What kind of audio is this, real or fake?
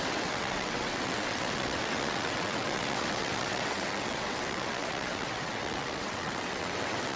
fake